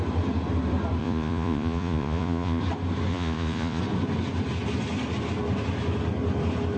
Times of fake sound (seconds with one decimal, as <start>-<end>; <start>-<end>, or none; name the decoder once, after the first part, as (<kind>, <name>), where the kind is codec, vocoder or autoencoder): 1.0-2.6 (vocoder, Vocos); 3.1-3.8